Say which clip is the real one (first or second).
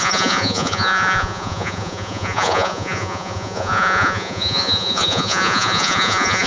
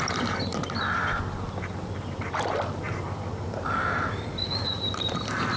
second